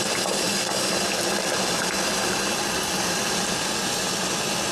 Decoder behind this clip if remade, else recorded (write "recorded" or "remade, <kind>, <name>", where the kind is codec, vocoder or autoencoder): recorded